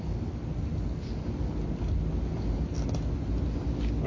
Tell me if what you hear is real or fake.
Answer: real